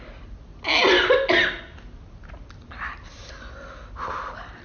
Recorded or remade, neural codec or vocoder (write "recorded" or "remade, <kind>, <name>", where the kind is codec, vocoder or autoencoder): recorded